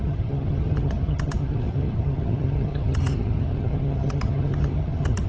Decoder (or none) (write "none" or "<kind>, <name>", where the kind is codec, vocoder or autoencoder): vocoder, HiFi-GAN